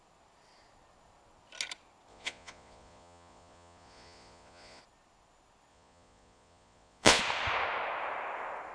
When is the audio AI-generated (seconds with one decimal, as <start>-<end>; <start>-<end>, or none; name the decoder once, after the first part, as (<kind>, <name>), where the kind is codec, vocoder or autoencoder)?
2.1-4.8 (vocoder, Vocos); 5.7-7.2